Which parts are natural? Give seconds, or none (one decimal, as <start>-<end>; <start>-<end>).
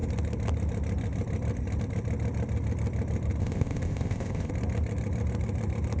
0.0-3.4; 4.5-6.0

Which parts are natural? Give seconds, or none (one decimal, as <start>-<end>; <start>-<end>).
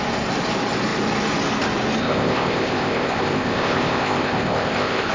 0.0-2.0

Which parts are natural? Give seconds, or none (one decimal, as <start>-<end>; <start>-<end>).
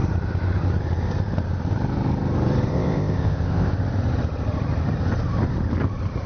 0.0-2.7; 3.7-6.3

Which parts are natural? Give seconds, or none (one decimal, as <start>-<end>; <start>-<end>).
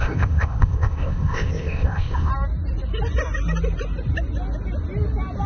2.3-5.5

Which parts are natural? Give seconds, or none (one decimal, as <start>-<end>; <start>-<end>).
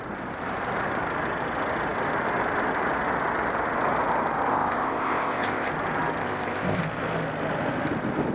0.0-4.5; 5.7-6.2; 6.8-8.3